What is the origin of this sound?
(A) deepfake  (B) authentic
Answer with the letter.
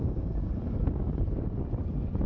B